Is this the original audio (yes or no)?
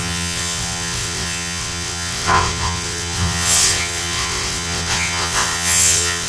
no